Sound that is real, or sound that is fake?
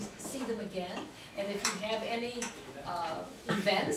fake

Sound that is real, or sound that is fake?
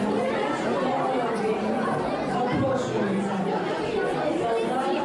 real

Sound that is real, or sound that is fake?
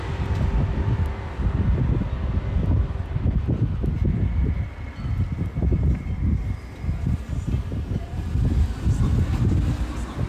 real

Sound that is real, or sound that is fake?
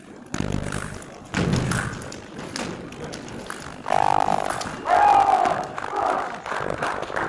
real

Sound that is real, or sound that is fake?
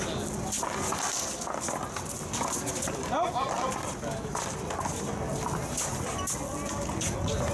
real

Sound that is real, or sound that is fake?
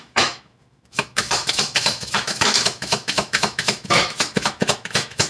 fake